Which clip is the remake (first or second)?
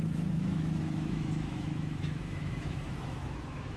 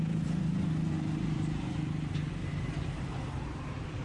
first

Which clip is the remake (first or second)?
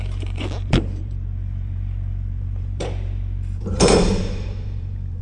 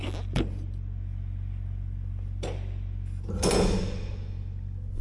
first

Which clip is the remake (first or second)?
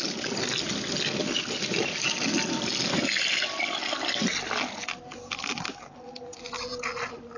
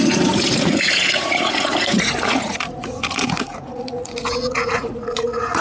second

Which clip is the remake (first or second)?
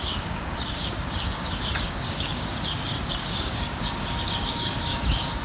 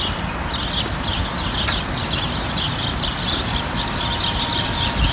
first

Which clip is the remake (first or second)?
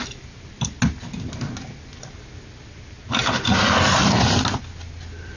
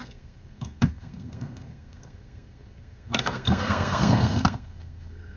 second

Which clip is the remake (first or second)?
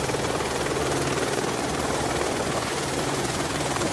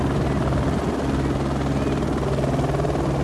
first